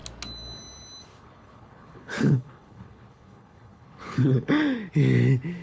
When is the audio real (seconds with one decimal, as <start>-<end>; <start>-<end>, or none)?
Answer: 0.0-1.1; 4.5-5.6